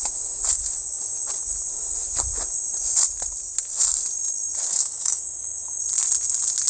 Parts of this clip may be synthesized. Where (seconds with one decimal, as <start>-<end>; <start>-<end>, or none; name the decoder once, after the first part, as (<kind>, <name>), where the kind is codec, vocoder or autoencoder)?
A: 4.7-5.8 (autoencoder, DAC-VAE)